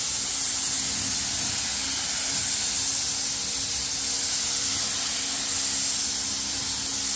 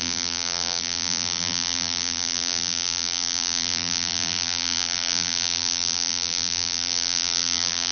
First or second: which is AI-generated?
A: second